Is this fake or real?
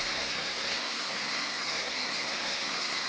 fake